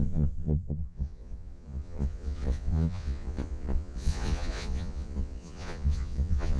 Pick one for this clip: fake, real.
fake